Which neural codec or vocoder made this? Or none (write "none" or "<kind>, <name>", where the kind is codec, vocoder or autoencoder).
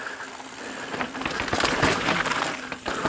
vocoder, BigVGAN v2